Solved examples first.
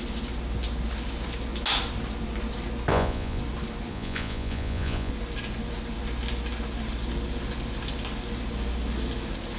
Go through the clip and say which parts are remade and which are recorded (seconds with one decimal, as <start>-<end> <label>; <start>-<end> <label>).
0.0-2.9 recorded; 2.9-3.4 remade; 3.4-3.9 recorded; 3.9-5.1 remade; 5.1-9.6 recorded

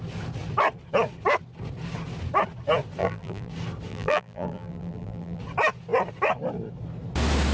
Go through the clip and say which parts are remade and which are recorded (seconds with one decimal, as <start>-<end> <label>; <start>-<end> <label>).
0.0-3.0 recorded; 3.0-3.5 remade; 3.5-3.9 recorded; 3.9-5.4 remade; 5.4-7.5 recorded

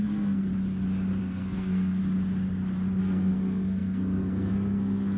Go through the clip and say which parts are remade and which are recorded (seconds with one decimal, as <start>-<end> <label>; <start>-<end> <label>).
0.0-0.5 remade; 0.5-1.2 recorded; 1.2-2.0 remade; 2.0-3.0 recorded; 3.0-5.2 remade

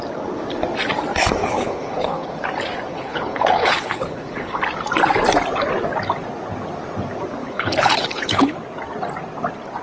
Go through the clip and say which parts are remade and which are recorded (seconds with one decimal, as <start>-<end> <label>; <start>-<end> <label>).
0.0-1.4 recorded; 1.4-2.4 remade; 2.4-2.9 recorded; 2.9-4.6 remade; 4.6-7.4 recorded; 7.4-8.6 remade; 8.6-9.8 recorded